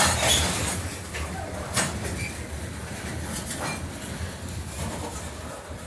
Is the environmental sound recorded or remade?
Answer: recorded